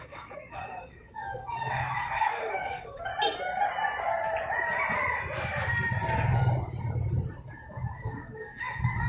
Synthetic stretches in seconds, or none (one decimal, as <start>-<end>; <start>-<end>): 0.0-3.1; 7.5-9.1